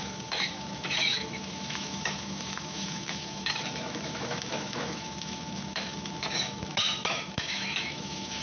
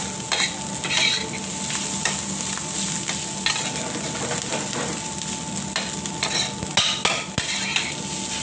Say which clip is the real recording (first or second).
second